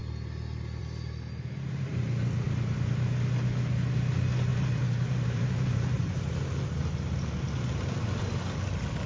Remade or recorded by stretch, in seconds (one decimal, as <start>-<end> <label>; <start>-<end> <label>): 0.0-4.5 recorded; 4.5-8.2 remade; 8.2-9.1 recorded